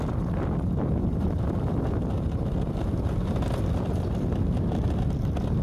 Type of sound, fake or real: real